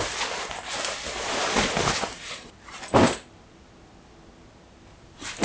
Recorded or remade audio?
recorded